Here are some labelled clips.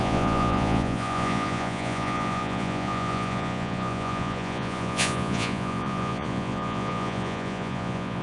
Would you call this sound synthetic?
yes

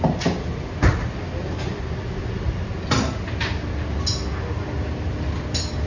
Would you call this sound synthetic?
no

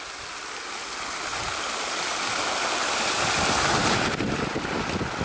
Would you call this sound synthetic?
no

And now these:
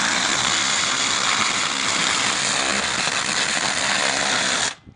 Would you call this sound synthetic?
no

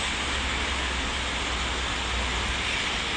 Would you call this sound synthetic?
no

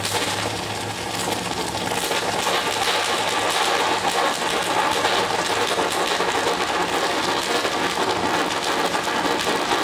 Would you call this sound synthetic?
no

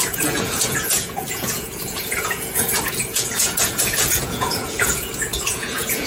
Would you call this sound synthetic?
yes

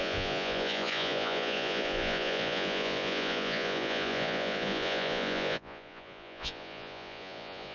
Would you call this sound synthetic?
yes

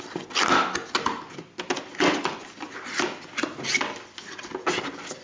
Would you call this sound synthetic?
no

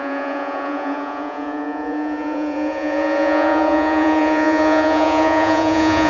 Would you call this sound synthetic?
yes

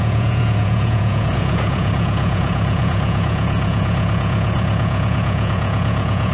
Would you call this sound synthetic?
yes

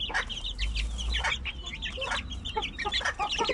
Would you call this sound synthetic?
no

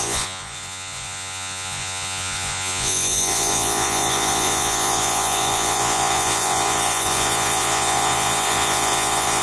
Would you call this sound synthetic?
yes